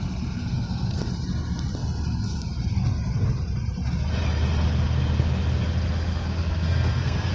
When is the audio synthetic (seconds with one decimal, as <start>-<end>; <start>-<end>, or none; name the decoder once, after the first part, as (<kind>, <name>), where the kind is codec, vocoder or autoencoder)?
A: 0.4-1.0 (codec, SNAC); 6.1-7.3